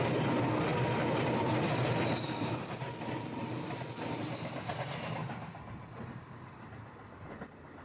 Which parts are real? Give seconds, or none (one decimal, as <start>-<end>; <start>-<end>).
0.0-7.8